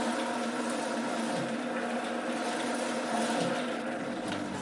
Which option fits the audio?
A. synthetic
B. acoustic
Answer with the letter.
B